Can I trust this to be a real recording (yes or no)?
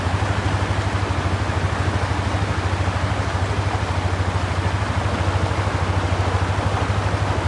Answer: yes